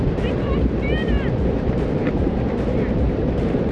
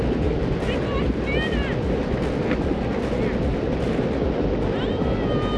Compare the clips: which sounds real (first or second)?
second